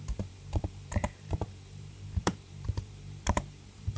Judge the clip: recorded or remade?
remade